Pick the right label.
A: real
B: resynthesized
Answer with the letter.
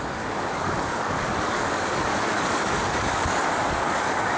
B